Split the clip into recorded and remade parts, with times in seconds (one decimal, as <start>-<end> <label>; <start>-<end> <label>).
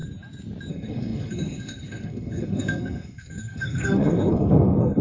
0.0-0.7 recorded; 0.7-5.0 remade